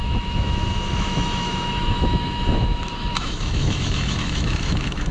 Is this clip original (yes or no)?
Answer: no